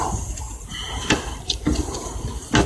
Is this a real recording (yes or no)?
yes